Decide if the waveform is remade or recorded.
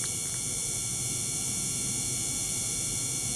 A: remade